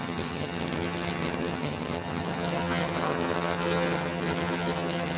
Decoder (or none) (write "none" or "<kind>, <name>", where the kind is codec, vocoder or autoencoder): vocoder, HiFi-GAN